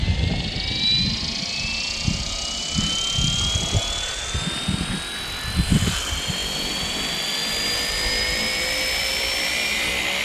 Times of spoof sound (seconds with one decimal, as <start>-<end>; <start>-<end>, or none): 0.0-10.2